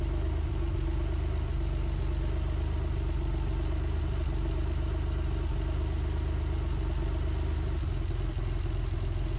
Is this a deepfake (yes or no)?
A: no